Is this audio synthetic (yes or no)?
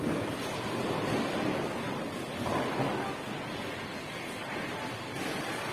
no